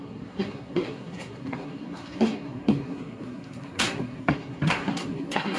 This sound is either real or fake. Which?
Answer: fake